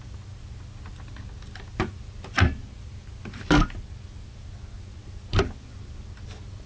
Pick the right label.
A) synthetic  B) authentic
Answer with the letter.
B